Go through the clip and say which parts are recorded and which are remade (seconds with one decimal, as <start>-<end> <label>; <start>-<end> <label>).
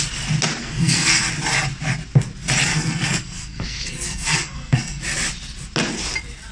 0.0-0.6 recorded; 0.6-1.3 remade; 1.3-2.7 recorded; 2.7-5.0 remade; 5.0-6.5 recorded